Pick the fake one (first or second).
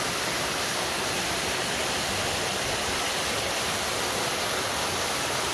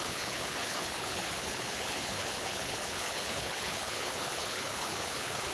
second